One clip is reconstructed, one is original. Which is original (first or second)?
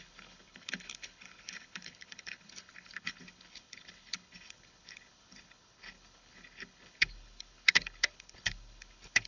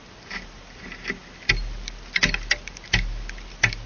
second